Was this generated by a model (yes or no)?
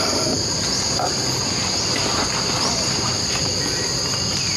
no